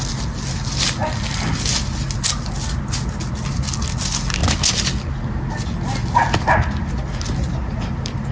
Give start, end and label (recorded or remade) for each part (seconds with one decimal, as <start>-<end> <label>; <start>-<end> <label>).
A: 0.0-8.3 recorded